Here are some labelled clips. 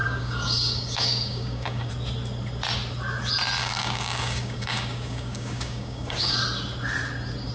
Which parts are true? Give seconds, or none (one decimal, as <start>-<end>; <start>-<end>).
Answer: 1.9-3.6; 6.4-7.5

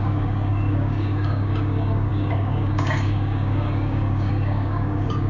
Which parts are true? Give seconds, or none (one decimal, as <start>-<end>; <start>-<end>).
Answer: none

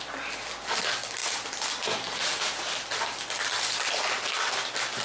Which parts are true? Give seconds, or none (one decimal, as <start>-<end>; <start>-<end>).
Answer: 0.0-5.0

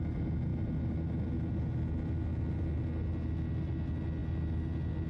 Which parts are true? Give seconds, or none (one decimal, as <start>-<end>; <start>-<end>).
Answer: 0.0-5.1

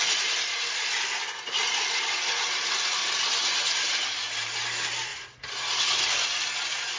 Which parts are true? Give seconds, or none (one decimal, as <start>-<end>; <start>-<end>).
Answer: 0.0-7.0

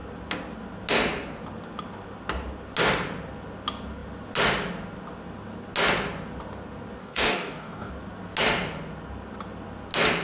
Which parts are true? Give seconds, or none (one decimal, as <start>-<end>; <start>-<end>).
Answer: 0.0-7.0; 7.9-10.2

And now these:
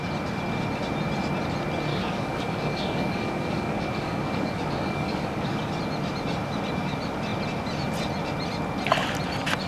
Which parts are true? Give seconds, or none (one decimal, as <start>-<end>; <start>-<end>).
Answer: 0.0-1.9; 5.7-9.7